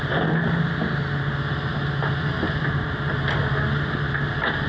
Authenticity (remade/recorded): recorded